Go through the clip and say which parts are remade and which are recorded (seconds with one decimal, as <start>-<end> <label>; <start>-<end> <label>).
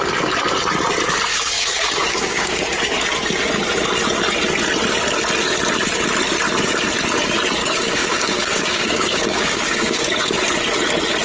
0.0-1.3 recorded; 1.3-2.6 remade; 2.6-7.6 recorded; 7.6-10.3 remade; 10.3-11.2 recorded